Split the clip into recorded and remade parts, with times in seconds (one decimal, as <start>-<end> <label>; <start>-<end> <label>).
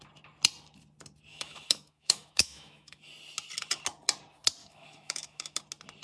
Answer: 0.0-1.3 recorded; 1.3-3.1 remade; 3.1-4.6 recorded; 4.6-5.6 remade; 5.6-6.0 recorded